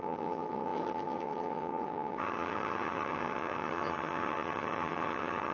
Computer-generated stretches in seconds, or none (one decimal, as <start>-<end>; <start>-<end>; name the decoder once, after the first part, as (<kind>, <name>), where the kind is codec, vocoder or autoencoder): 0.0-5.5 (vocoder, HiFi-GAN)